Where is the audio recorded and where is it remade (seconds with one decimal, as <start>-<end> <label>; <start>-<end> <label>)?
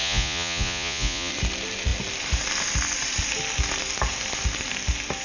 0.0-1.3 remade; 1.3-5.2 recorded